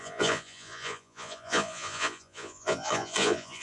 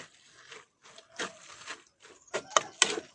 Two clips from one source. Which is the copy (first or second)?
first